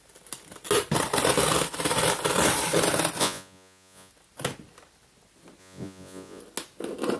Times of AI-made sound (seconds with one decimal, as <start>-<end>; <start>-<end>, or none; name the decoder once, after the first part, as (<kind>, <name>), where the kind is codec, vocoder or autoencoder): 3.2-4.1 (vocoder, Vocos); 5.6-6.4